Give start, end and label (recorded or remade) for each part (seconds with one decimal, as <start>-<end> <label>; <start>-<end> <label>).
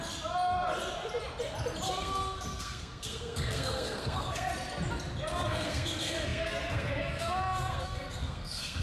0.0-1.9 recorded; 1.9-4.5 remade; 4.5-5.3 recorded; 5.3-8.8 remade